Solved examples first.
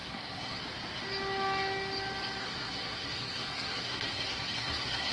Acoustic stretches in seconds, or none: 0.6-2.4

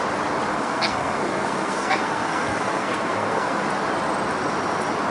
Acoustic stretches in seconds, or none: 0.0-0.5; 3.6-5.1